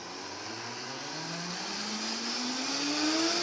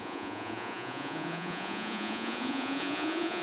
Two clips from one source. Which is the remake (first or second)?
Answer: second